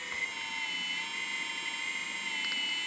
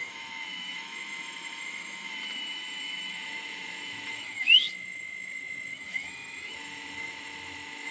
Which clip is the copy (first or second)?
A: second